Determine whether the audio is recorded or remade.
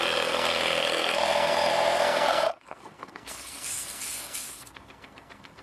remade